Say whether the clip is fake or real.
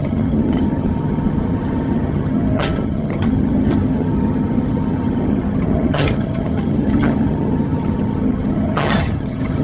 fake